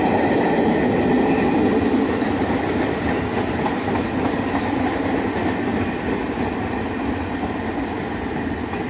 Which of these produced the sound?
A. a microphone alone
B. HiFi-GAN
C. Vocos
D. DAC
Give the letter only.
A